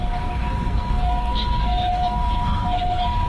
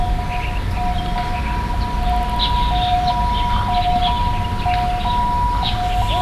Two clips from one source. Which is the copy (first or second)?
first